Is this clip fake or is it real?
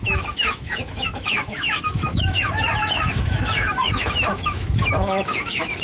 fake